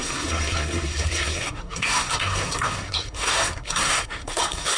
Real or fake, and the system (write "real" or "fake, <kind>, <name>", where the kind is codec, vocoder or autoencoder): fake, codec, SNAC